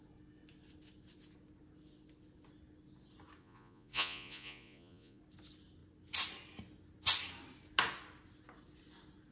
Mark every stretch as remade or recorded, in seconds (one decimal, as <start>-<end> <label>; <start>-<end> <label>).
0.0-3.4 recorded; 3.4-5.2 remade; 5.2-9.3 recorded